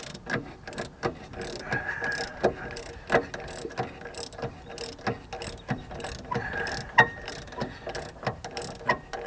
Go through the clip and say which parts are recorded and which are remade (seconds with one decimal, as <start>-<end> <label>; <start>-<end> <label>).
0.0-9.3 recorded